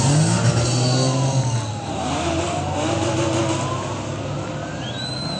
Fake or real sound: real